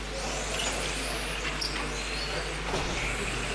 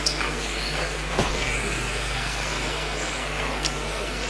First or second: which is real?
first